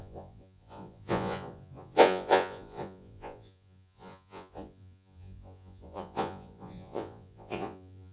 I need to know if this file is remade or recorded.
remade